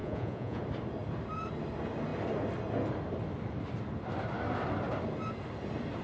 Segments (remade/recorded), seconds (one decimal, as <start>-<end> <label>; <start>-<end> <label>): 0.0-0.6 remade; 0.6-6.0 recorded